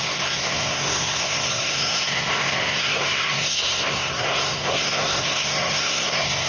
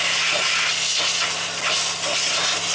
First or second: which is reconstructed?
first